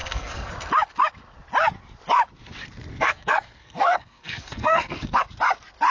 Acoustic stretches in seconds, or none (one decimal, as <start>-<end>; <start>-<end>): 0.5-2.9; 5.2-5.9